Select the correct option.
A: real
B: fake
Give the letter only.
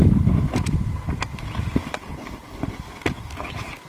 A